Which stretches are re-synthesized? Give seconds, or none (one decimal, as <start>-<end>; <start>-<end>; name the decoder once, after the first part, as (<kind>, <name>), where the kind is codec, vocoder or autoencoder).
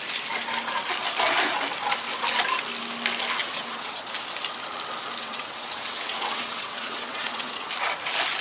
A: 3.4-4.0 (vocoder, WaveNeXt); 5.2-7.7